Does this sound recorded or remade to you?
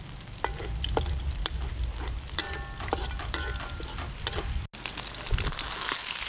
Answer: recorded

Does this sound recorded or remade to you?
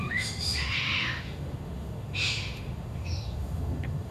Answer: remade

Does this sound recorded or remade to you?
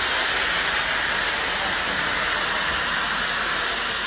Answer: recorded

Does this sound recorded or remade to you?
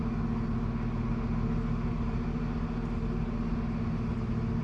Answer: recorded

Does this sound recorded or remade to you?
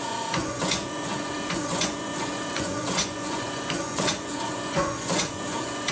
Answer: remade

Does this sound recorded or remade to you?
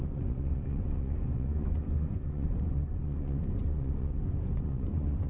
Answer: remade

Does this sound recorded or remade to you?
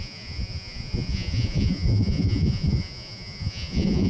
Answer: remade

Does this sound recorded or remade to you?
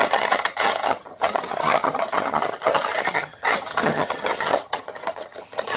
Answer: remade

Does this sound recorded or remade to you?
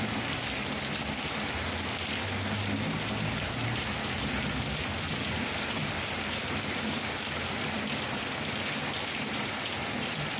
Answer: recorded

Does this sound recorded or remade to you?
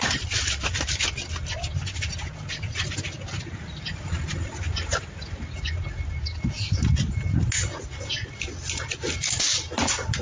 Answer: recorded